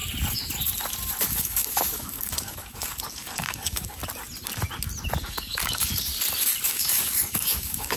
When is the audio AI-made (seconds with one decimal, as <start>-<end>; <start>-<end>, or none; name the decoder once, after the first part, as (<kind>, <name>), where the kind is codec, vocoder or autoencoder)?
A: 1.2-4.0 (codec, DAC); 5.2-6.1; 6.7-8.0